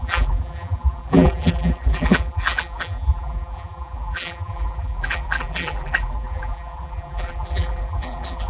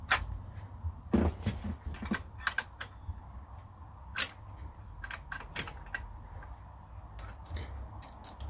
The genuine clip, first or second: second